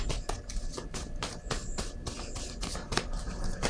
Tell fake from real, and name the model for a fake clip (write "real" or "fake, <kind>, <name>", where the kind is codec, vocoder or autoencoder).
real